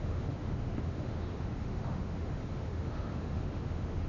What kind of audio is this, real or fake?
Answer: fake